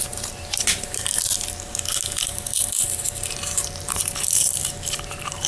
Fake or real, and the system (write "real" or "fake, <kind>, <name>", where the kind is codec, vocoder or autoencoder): fake, vocoder, BigVGAN v2